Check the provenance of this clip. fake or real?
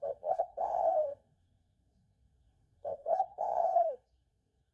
fake